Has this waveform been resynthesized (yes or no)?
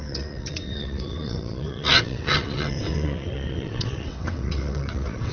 yes